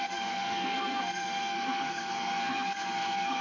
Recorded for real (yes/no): no